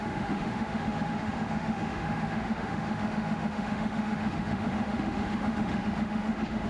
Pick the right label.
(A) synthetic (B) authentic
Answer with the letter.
A